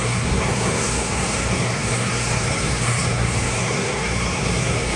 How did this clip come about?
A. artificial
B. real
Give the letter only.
A